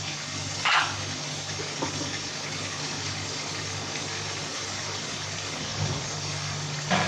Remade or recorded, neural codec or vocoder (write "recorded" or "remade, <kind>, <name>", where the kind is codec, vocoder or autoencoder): remade, codec, DAC